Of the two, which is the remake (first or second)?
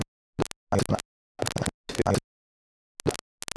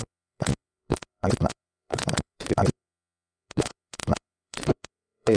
second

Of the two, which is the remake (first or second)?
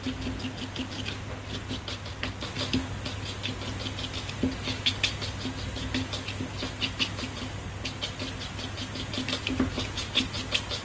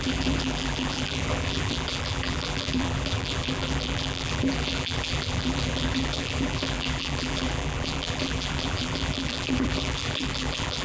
second